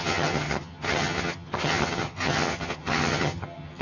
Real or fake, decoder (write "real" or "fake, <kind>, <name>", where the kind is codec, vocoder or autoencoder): fake, vocoder, HiFi-GAN